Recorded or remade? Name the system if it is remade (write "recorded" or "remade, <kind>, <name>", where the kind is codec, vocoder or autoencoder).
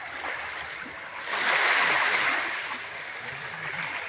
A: recorded